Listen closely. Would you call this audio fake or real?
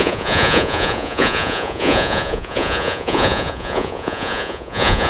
fake